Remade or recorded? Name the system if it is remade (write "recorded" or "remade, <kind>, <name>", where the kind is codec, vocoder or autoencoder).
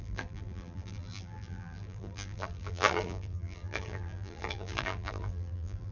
remade, vocoder, BigVGAN v2